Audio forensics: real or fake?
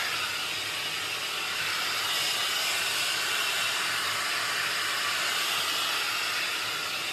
real